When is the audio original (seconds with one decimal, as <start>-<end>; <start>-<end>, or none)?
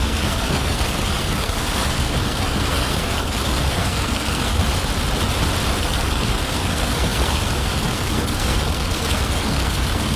4.6-5.8